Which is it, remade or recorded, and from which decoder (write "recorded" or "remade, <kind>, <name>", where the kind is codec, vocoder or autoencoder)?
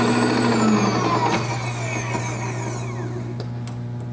recorded